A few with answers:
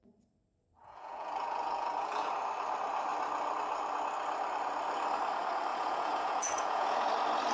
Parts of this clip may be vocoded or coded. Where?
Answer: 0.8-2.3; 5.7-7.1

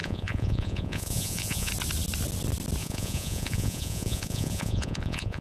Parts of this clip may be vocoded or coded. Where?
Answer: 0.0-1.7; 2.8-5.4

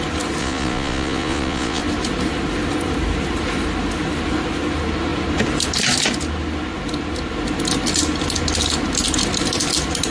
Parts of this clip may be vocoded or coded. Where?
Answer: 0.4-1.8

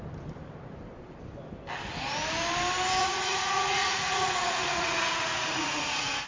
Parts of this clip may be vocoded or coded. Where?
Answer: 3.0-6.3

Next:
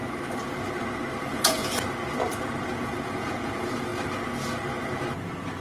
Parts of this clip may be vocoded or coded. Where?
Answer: 1.2-1.6; 2.7-3.9